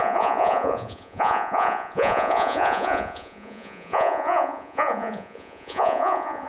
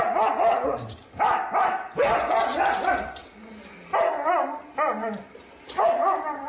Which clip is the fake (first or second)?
first